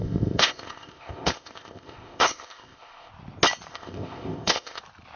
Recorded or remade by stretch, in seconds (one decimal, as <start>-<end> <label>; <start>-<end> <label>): 0.0-3.1 remade; 3.1-3.7 recorded; 3.7-4.8 remade; 4.8-5.2 recorded